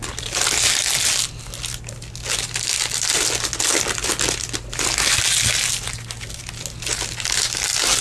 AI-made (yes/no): no